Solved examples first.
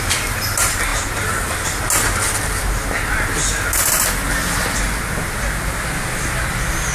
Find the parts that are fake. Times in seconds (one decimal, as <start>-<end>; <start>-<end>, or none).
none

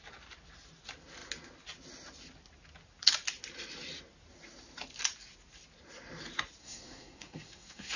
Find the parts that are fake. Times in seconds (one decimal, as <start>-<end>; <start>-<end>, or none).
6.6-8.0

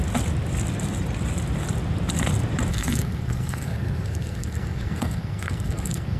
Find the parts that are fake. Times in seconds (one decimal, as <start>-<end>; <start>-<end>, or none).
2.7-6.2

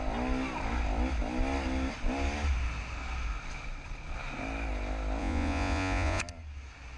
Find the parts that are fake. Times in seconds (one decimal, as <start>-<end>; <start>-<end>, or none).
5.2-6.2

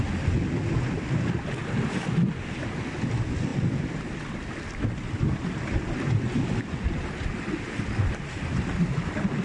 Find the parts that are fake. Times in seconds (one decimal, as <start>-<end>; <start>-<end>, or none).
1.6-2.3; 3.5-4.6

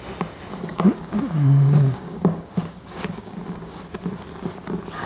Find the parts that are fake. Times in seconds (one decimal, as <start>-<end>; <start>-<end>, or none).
0.7-3.8

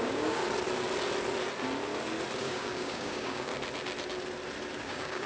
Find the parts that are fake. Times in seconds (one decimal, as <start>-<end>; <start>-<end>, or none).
0.0-0.4; 2.4-3.5; 4.8-5.3

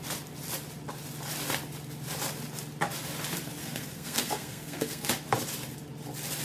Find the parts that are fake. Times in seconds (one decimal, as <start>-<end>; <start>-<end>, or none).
3.6-5.1